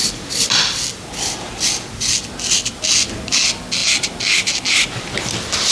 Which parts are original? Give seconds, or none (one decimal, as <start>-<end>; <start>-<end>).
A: 3.4-5.7